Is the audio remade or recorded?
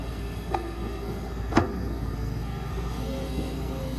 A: remade